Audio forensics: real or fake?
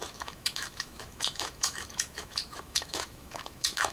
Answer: fake